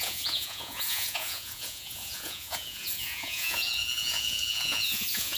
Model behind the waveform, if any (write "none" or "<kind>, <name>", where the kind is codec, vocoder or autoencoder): vocoder, Vocos